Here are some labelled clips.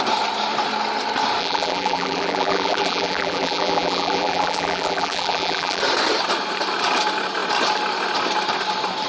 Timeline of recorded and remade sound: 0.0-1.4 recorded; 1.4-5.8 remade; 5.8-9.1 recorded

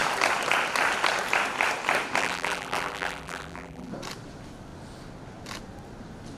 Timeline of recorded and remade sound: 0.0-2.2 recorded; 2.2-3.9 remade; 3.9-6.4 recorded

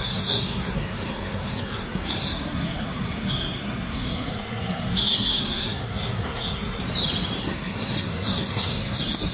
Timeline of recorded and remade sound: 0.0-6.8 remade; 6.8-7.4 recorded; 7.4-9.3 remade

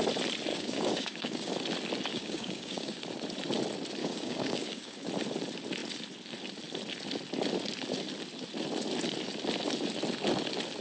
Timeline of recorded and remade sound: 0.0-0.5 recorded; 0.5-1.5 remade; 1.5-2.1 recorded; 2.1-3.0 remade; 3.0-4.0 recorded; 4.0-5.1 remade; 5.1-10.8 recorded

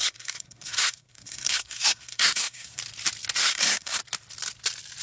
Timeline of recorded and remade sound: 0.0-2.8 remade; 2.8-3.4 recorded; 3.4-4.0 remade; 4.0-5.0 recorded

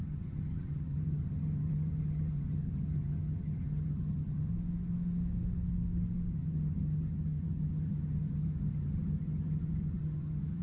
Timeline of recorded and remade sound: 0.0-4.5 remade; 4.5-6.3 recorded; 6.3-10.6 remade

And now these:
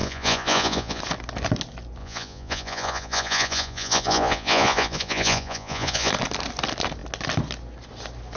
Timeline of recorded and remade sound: 0.0-1.0 remade; 1.0-2.0 recorded; 2.0-6.1 remade; 6.1-8.4 recorded

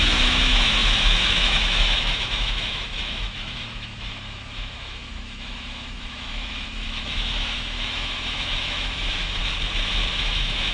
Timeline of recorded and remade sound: 0.0-9.4 remade; 9.4-10.1 recorded; 10.1-10.7 remade